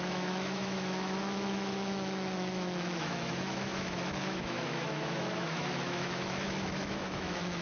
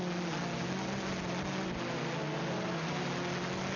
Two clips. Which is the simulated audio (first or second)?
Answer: first